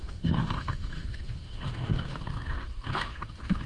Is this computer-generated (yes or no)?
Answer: yes